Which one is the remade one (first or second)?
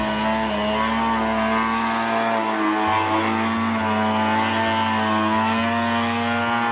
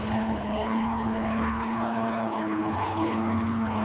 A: second